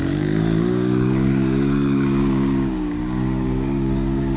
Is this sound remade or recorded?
remade